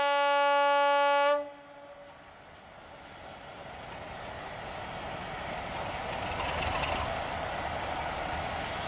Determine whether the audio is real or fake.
real